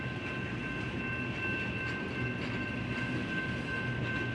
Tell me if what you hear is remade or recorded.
recorded